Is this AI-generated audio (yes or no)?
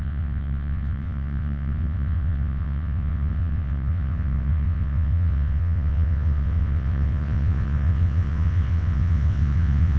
yes